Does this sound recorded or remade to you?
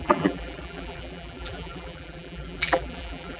remade